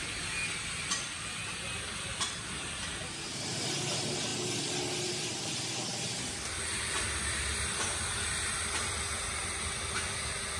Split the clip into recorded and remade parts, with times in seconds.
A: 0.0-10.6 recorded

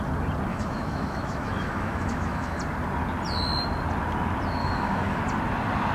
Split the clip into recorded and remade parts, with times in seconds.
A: 0.0-0.5 recorded; 0.5-2.6 remade; 2.6-4.6 recorded; 4.6-5.2 remade; 5.2-5.9 recorded

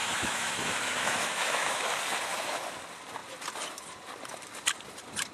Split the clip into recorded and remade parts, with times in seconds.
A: 0.0-1.9 remade; 1.9-5.3 recorded

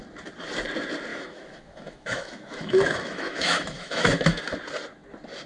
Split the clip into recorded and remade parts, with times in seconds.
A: 0.0-1.1 recorded; 1.1-4.4 remade; 4.4-5.5 recorded

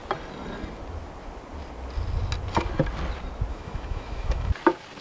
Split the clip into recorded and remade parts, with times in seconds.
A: 0.0-3.5 recorded; 3.5-4.5 remade; 4.5-5.0 recorded

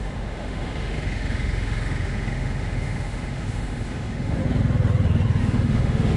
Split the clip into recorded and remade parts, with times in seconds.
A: 0.0-4.4 remade; 4.4-5.4 recorded; 5.4-6.2 remade

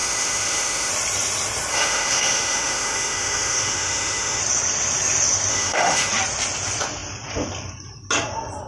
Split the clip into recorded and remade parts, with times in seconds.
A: 0.0-0.9 remade; 0.9-1.7 recorded; 1.7-4.4 remade; 4.4-5.5 recorded; 5.5-6.1 remade; 6.1-8.7 recorded

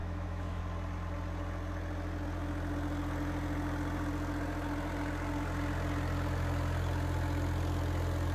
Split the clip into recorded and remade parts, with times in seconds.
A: 0.0-0.6 remade; 0.6-8.3 recorded